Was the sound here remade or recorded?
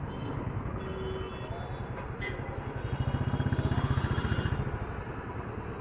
recorded